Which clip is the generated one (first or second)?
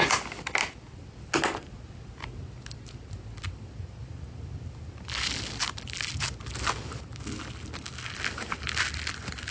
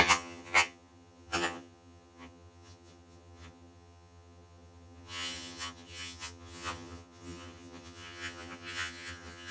second